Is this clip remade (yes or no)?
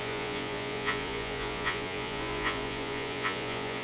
yes